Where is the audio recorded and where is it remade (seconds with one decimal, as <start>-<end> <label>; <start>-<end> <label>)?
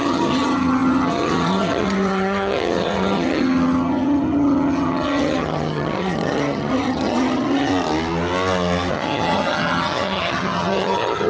0.0-7.7 remade; 7.7-8.9 recorded; 8.9-11.3 remade